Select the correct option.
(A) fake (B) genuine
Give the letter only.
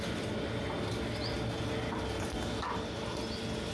B